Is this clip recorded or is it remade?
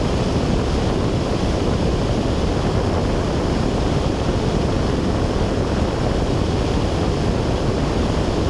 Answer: recorded